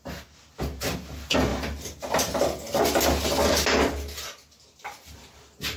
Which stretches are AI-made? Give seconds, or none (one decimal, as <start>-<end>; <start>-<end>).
none

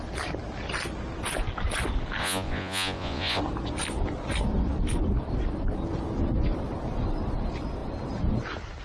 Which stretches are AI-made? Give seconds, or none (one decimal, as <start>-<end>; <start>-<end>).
2.2-3.4

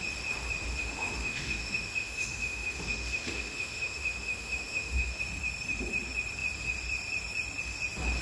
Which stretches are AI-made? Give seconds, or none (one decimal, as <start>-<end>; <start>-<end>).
0.7-5.2

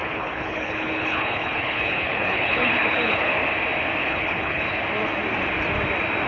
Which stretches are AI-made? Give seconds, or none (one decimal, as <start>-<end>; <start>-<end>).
0.0-3.3; 4.0-4.8

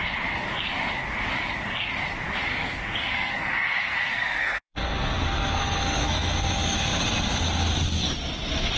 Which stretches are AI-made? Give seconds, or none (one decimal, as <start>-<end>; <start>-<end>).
2.5-6.5